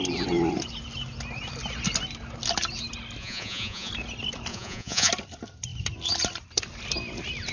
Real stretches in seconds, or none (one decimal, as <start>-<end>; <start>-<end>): 0.0-3.2; 3.9-4.5; 5.1-7.5